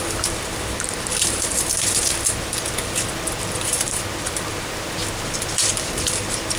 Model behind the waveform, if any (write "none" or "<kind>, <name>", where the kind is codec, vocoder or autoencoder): vocoder, BigVGAN v2